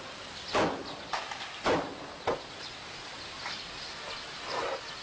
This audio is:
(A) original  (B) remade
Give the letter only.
A